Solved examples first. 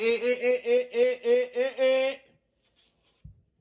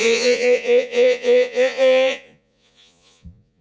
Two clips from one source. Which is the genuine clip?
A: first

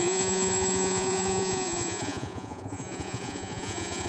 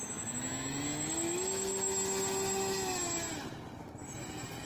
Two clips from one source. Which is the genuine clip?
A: second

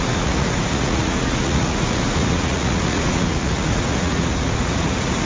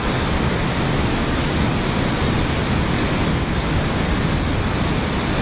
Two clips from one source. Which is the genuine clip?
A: second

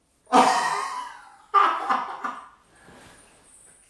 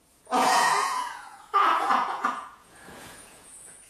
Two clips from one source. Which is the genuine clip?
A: first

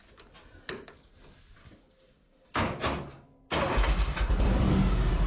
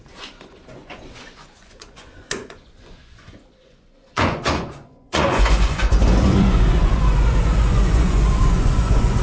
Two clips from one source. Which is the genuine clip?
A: first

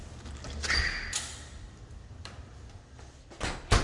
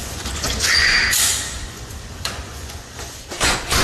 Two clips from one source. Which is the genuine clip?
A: first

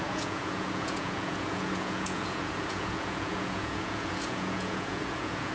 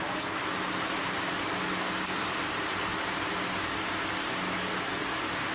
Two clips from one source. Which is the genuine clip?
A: second